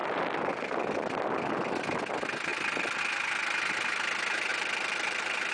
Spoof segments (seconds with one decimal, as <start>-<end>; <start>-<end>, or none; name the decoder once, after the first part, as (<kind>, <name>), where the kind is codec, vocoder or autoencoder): 0.0-1.2 (vocoder, BigVGAN v2); 2.5-3.0; 4.5-5.5